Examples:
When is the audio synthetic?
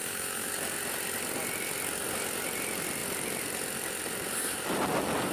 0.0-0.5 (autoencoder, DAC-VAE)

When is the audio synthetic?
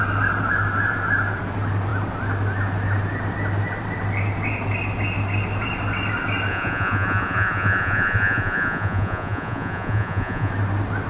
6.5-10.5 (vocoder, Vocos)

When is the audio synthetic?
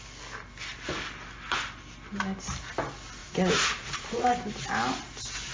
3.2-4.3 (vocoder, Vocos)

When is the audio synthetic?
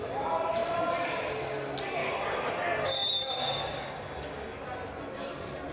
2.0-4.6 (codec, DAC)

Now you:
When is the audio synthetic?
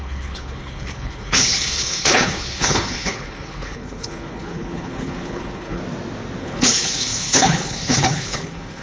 0.0-5.8 (codec, HILCodec); 6.4-8.8